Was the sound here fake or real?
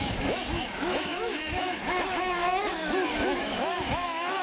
fake